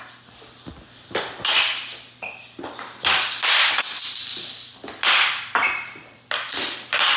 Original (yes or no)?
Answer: yes